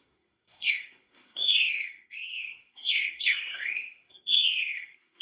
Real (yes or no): no